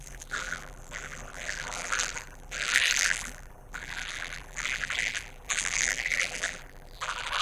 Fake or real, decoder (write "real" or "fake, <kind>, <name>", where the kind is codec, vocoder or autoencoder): fake, vocoder, BigVGAN v2